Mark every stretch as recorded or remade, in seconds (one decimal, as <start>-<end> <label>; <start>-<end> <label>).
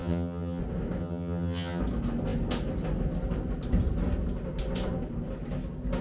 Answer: 0.0-0.6 remade; 0.6-1.0 recorded; 1.0-1.8 remade; 1.8-6.0 recorded